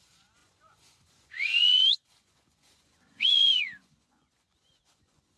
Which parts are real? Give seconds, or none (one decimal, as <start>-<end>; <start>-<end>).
none